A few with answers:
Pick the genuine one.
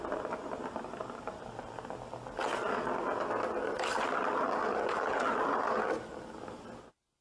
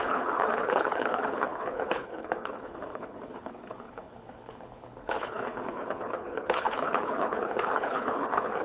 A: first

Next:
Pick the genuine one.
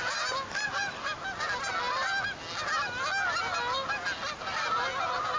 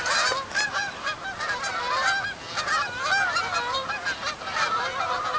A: first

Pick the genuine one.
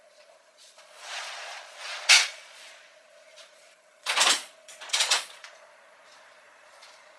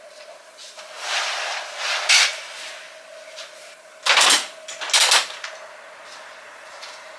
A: second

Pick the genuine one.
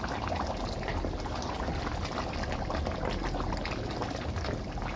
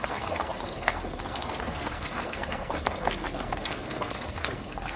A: first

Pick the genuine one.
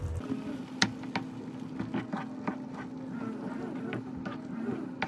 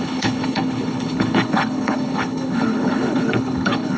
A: first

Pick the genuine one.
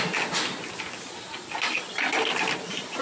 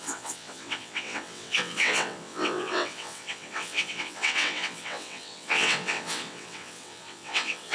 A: first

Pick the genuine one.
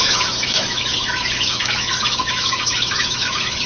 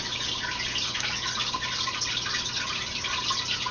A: second